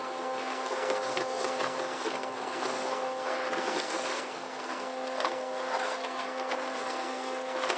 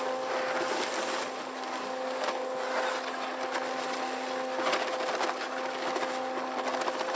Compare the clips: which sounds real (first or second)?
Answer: second